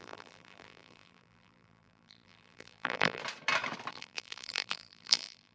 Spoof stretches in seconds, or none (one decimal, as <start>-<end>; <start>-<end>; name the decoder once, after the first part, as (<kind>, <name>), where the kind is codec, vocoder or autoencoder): 0.0-3.2 (vocoder, BigVGAN v2); 3.9-5.5